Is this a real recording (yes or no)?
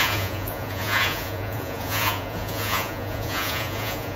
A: no